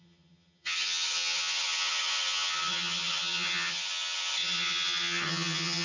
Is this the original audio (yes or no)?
no